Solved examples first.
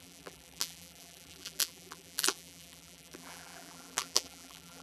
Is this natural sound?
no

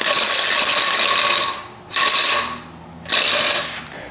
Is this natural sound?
yes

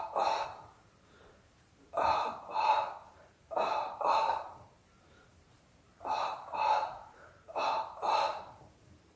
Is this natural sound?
no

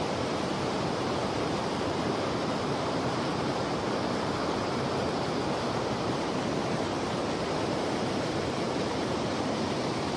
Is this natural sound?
no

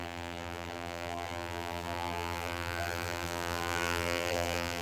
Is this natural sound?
no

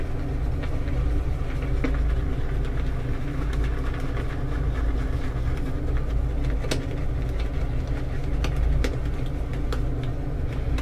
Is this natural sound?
yes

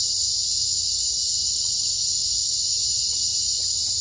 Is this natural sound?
yes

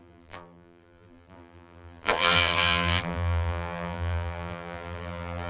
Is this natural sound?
no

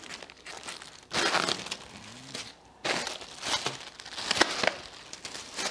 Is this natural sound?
yes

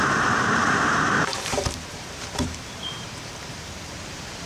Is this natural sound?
no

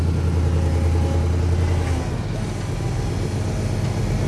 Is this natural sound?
yes